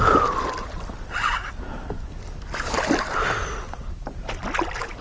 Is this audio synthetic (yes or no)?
no